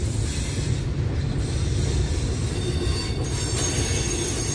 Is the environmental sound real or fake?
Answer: real